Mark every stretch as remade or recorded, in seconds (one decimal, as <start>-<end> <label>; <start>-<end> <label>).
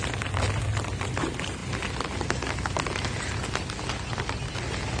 0.0-5.0 recorded